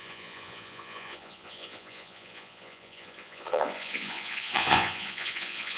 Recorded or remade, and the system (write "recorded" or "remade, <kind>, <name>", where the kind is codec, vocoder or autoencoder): remade, vocoder, Vocos